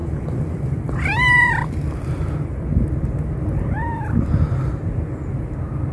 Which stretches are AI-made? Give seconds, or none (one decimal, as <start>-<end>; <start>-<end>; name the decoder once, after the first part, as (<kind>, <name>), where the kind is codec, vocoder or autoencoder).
0.0-3.0 (vocoder, BigVGAN v2)